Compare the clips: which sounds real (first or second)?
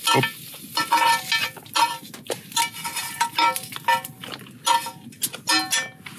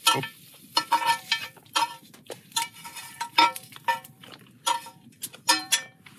first